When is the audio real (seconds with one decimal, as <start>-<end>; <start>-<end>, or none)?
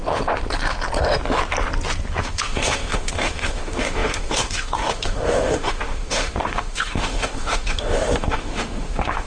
0.0-2.2